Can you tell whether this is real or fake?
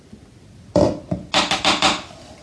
real